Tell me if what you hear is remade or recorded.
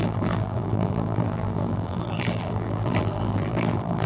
remade